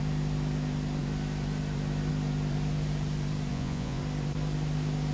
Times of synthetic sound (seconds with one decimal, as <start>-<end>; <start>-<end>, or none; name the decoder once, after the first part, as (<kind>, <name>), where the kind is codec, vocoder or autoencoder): 3.5-4.0 (vocoder, Vocos)